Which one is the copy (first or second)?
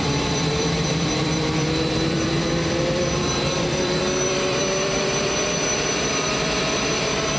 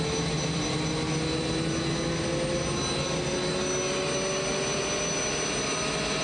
first